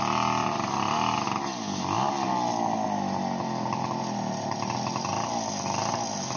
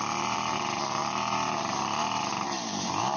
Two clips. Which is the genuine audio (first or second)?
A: first